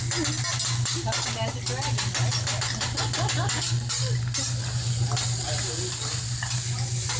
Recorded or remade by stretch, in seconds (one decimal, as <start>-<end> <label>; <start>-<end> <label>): 0.0-7.2 recorded